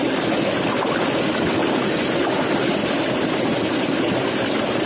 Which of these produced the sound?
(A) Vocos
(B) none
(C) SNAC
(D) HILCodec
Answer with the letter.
B